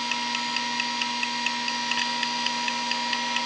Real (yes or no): yes